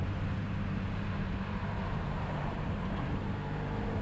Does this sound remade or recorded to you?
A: remade